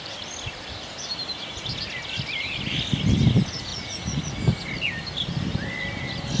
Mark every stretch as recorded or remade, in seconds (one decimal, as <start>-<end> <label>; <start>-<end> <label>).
0.0-3.7 recorded; 3.7-4.3 remade; 4.3-6.4 recorded